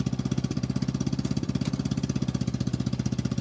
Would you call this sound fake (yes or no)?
no